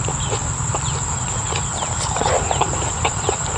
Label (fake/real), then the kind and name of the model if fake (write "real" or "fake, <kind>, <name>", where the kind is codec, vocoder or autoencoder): fake, vocoder, BigVGAN v2